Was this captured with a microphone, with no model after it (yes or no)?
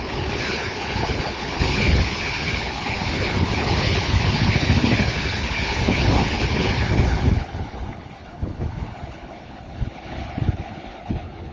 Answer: no